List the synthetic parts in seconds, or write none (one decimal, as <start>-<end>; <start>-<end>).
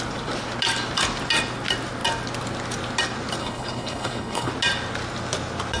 3.4-4.5